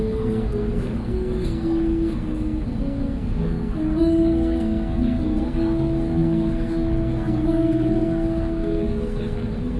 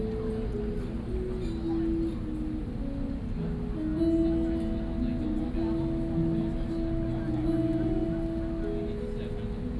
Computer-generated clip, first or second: first